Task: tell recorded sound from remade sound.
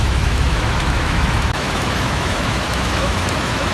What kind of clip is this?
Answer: remade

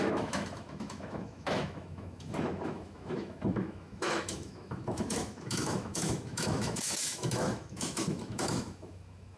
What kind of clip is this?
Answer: remade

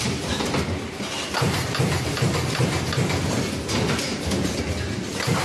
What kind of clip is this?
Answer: recorded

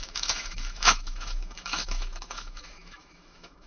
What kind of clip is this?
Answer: remade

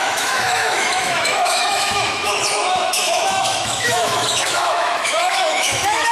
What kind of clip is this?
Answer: remade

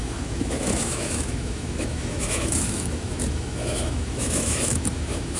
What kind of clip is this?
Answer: remade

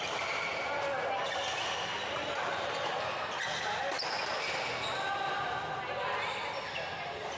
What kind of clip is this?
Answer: recorded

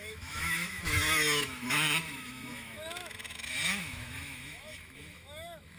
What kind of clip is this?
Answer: remade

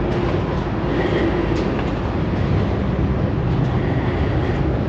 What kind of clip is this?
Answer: recorded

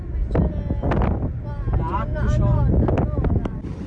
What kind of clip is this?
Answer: recorded